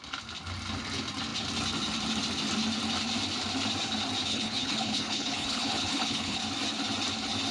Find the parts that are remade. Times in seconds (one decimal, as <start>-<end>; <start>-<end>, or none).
4.3-6.4

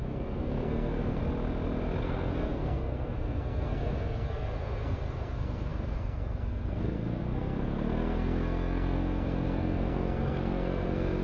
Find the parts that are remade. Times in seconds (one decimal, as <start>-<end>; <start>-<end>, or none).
0.0-1.2; 2.0-11.2